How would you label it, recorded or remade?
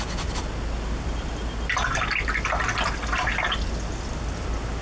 recorded